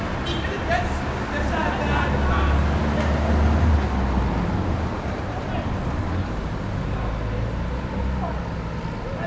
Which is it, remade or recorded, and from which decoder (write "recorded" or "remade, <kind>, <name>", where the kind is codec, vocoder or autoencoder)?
recorded